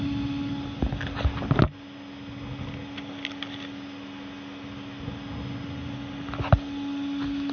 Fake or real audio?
real